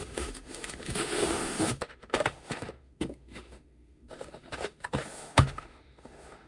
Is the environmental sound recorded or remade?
remade